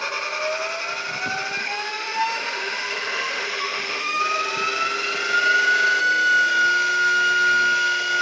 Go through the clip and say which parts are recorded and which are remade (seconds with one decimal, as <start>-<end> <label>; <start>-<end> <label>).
0.0-1.6 recorded; 1.6-4.2 remade; 4.2-6.0 recorded; 6.0-8.2 remade